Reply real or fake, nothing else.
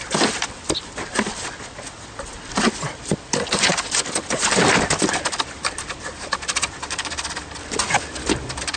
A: real